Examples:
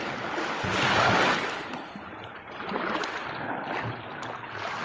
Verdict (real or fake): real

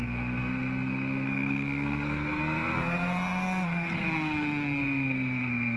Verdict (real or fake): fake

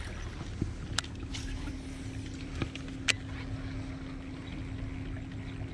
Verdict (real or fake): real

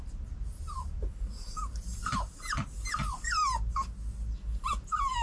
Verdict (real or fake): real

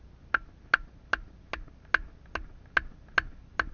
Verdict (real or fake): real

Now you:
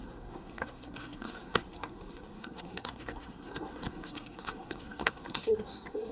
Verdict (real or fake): fake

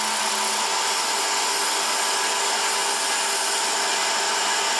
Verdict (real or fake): real